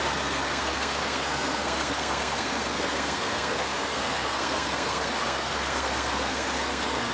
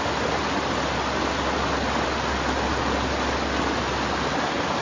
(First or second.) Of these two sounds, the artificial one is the first